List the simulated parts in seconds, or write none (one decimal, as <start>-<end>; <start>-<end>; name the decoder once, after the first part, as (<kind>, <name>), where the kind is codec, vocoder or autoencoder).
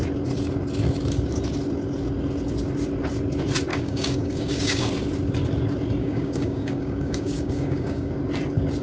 3.7-4.9 (codec, DAC); 6.0-8.1